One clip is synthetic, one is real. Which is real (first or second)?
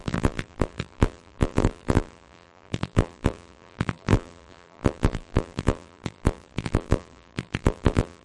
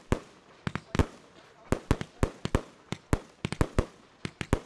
second